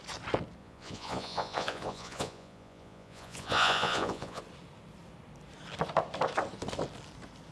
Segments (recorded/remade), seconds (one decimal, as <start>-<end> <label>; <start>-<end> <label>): 0.0-0.6 recorded; 0.6-4.4 remade; 4.4-7.5 recorded